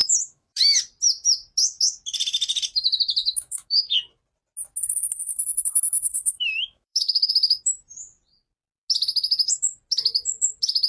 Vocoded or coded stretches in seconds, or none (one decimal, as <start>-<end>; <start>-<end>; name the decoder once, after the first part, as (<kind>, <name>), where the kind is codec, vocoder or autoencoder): 0.0-0.6 (autoencoder, DAC-VAE); 3.2-3.8; 5.3-7.3